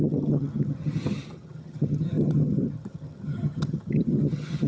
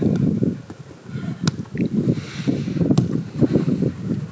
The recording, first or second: second